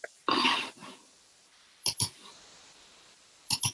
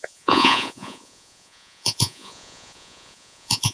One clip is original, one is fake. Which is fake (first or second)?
second